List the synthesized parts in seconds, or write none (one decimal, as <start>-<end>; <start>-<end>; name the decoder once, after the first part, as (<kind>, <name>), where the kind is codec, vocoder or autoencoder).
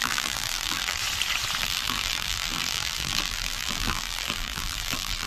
0.0-1.0 (vocoder, BigVGAN v2); 1.6-5.3